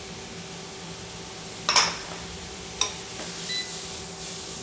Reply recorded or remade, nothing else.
recorded